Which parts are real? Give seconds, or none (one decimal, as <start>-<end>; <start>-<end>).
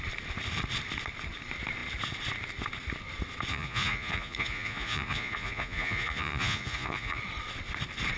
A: 0.0-3.5; 7.2-8.2